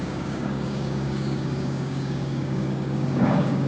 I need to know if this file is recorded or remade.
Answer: remade